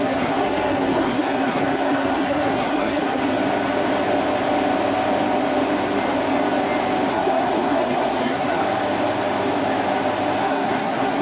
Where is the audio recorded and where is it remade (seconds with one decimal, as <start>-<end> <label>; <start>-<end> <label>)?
0.0-3.2 remade; 3.2-7.1 recorded; 7.1-8.6 remade; 8.6-10.4 recorded; 10.4-11.2 remade